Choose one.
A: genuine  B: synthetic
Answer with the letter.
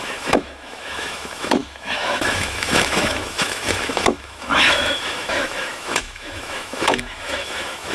B